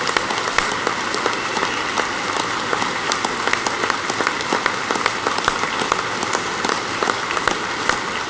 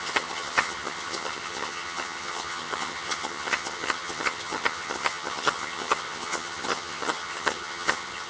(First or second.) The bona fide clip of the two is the first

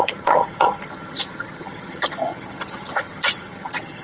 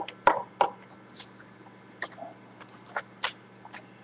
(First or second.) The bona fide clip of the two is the second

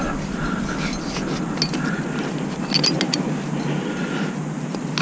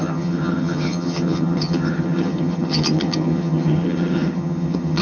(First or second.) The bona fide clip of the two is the first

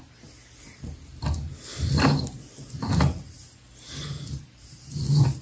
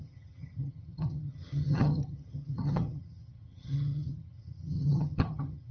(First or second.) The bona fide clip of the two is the first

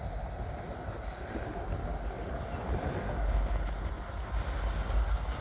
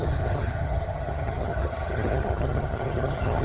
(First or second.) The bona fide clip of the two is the first